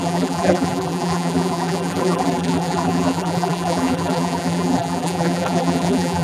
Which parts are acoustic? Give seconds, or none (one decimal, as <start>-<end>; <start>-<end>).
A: none